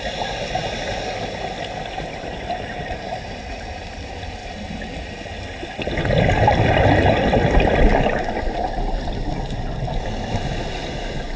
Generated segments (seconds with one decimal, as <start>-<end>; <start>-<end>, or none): none